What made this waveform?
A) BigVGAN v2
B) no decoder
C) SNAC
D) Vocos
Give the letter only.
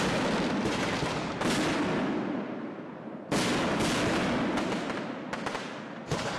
B